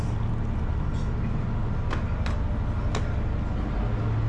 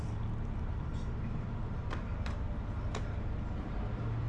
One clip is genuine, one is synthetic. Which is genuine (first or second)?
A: first